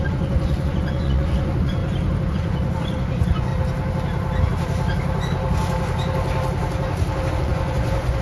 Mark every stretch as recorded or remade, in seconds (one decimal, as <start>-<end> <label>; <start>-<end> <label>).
0.0-1.8 remade; 1.8-2.3 recorded; 2.3-3.5 remade; 3.5-7.3 recorded; 7.3-8.2 remade